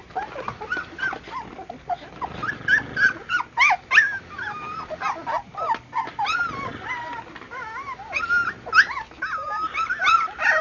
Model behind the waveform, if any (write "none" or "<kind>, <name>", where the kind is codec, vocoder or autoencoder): none